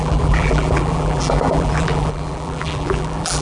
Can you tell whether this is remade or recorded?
remade